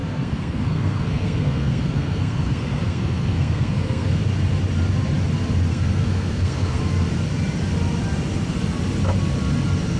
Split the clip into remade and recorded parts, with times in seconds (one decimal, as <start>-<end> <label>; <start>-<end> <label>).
0.0-4.2 remade; 4.2-5.7 recorded; 5.7-6.8 remade; 6.8-10.0 recorded